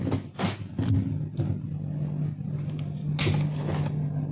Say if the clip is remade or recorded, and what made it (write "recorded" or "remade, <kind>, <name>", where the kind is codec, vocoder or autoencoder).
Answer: recorded